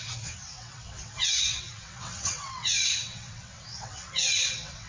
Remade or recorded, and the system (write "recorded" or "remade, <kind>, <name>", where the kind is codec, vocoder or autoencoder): remade, vocoder, WaveNeXt